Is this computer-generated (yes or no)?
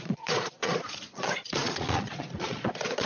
yes